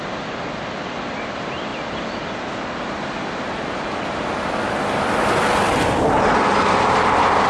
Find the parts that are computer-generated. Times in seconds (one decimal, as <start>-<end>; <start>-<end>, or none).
none